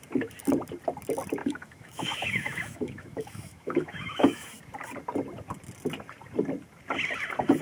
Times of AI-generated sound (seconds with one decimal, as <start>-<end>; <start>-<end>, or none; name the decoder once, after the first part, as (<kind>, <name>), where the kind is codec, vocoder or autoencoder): 1.4-4.6 (autoencoder, DAC-VAE)